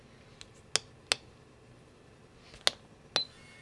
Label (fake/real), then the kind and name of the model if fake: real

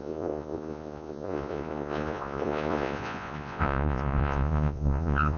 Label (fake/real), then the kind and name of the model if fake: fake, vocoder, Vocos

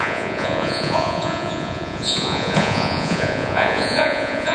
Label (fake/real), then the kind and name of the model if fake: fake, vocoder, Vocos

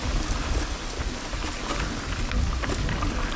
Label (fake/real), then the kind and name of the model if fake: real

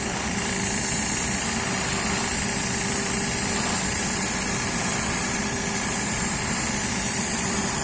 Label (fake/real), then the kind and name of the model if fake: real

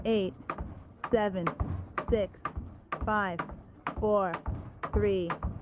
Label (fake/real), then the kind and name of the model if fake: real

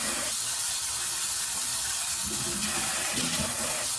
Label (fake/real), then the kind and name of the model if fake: real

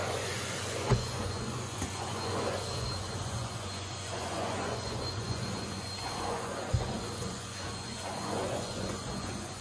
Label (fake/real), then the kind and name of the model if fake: fake, vocoder, Vocos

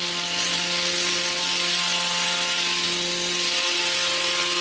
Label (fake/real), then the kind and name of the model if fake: real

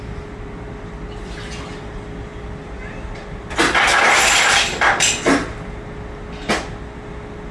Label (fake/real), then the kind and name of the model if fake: real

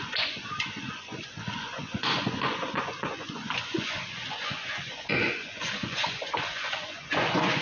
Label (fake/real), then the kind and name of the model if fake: fake, vocoder, Vocos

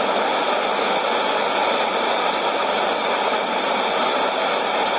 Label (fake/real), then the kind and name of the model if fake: real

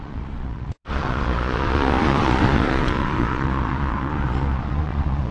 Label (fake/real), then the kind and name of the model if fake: fake, vocoder, Vocos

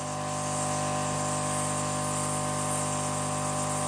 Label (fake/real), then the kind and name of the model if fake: real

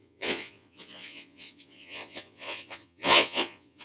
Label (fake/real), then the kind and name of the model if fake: fake, vocoder, Vocos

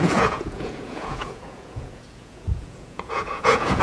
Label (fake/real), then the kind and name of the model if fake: fake, vocoder, Vocos